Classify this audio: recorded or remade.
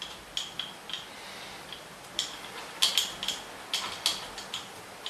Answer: recorded